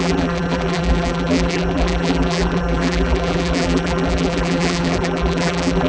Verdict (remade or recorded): remade